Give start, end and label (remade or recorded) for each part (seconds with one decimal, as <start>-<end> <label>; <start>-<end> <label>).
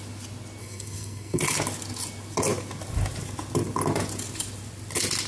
0.0-0.6 recorded; 0.6-1.4 remade; 1.4-5.3 recorded